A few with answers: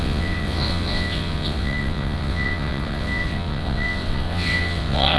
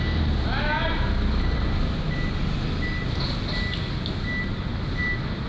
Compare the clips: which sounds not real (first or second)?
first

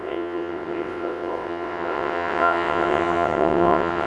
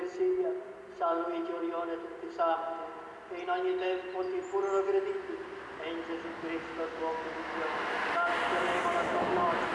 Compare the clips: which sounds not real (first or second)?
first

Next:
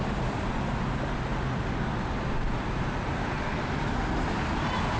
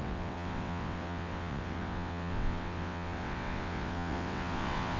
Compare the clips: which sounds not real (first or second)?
second